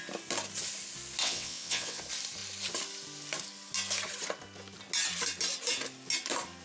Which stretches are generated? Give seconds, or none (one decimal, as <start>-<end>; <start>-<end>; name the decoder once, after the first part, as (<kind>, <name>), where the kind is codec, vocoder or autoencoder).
1.2-2.0 (vocoder, WaveNeXt)